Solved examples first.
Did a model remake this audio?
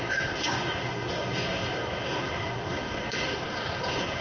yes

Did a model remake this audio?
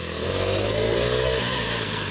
yes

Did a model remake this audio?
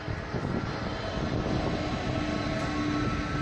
no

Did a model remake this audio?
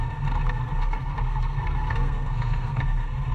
yes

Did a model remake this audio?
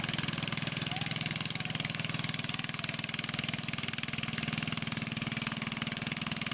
no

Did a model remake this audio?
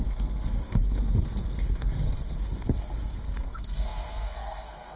yes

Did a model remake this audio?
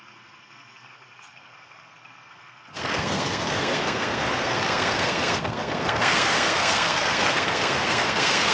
yes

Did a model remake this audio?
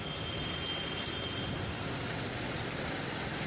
no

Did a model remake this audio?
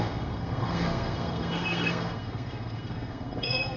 yes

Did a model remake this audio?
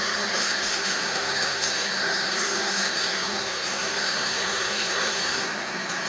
yes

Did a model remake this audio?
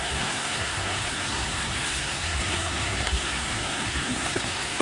yes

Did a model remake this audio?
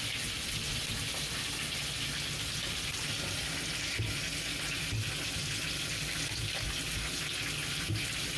no